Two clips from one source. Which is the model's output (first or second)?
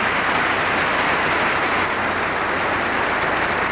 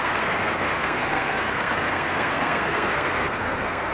second